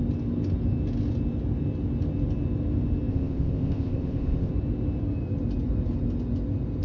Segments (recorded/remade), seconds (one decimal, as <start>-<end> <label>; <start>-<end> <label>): 0.0-3.1 recorded; 3.1-4.5 remade; 4.5-6.8 recorded